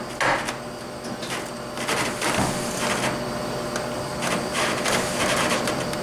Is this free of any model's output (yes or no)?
yes